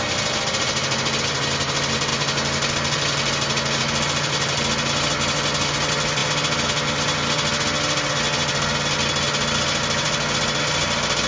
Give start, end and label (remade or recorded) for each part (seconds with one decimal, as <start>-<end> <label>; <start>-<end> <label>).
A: 0.0-11.3 recorded